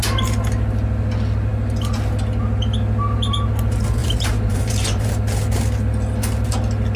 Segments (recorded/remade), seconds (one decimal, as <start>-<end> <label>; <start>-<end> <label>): 0.0-4.0 recorded; 4.0-5.1 remade; 5.1-7.0 recorded